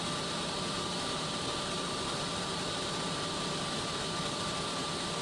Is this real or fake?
fake